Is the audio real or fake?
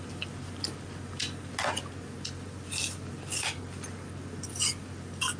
real